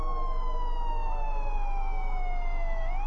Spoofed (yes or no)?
yes